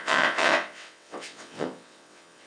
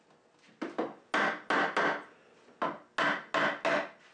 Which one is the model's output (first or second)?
first